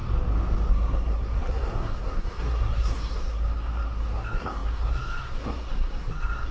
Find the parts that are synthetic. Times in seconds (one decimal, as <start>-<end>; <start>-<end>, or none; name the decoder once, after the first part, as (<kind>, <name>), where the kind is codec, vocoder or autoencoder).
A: 0.7-6.5 (codec, SNAC)